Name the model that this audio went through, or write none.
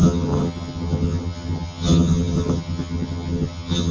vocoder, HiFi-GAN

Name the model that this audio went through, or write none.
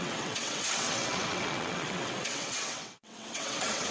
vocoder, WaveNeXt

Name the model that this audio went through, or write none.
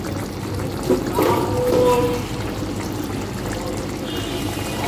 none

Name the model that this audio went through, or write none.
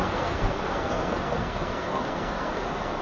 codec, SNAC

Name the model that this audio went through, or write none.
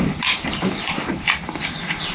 none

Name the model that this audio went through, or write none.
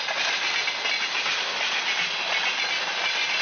none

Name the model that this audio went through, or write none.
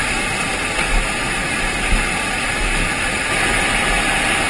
none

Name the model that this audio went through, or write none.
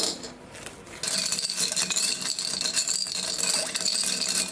none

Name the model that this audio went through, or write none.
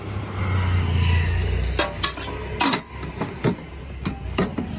none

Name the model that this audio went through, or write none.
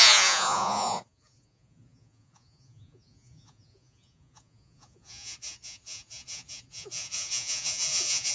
vocoder, Vocos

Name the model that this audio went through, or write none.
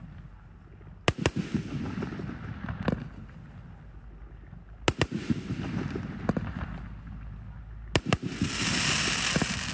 none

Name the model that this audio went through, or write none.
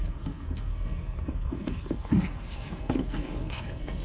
codec, SNAC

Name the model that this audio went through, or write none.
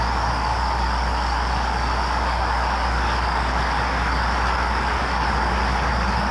codec, DAC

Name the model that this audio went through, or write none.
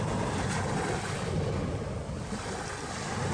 none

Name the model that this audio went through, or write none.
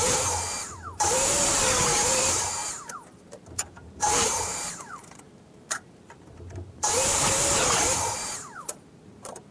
vocoder, BigVGAN v2